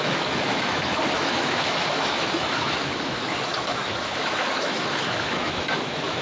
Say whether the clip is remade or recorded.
remade